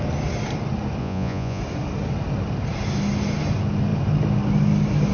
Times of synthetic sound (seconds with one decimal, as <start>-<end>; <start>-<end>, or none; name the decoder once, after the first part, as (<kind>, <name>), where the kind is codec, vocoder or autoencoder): 1.0-1.6 (vocoder, Vocos)